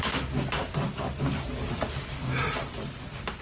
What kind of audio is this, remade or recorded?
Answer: recorded